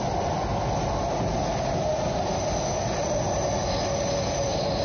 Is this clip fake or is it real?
real